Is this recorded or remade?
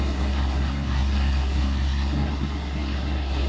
remade